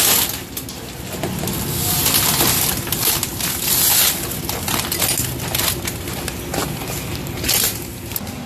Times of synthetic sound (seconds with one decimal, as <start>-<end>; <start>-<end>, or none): 6.6-8.5